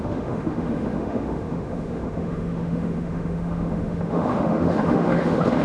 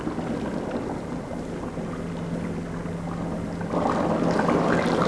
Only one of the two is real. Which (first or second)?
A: second